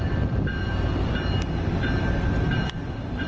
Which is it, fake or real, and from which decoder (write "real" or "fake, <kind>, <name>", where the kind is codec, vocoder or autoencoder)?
real